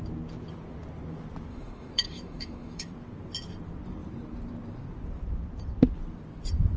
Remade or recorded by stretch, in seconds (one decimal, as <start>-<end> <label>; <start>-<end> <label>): 0.0-1.5 recorded; 1.5-2.9 remade; 2.9-6.8 recorded